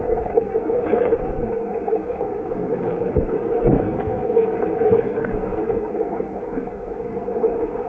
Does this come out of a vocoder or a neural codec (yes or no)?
yes